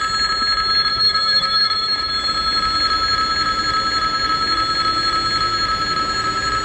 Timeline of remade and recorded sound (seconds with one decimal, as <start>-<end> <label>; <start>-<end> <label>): 0.0-0.9 recorded; 0.9-2.1 remade; 2.1-6.6 recorded